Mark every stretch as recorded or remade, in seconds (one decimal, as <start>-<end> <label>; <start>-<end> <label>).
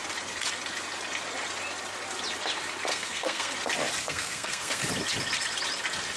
0.0-2.9 recorded; 2.9-3.5 remade; 3.5-4.0 recorded; 4.0-4.8 remade; 4.8-6.2 recorded